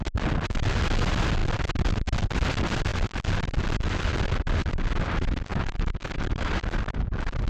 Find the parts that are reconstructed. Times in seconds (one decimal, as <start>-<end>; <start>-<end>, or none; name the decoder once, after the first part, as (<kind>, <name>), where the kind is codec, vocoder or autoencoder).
5.5-6.5 (autoencoder, DAC-VAE)